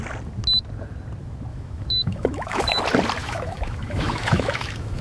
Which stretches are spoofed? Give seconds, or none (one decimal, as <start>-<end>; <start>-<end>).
1.5-2.8; 3.2-5.0